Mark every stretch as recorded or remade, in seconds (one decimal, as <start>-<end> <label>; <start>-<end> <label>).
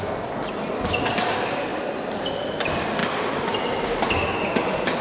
0.0-5.0 recorded